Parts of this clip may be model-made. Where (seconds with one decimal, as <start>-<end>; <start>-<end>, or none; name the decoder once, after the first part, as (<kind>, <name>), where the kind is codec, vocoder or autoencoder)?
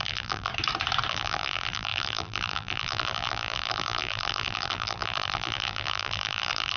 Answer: 0.0-0.5 (vocoder, BigVGAN v2); 1.1-6.8